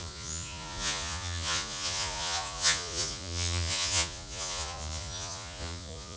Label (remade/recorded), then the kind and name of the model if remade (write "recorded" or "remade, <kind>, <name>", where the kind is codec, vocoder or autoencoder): remade, vocoder, Vocos